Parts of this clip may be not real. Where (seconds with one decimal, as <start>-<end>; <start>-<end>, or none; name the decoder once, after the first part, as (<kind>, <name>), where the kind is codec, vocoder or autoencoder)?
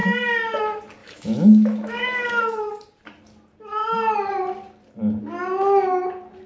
1.0-2.7 (autoencoder, DAC-VAE)